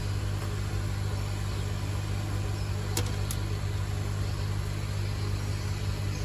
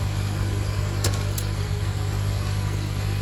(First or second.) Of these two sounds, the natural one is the first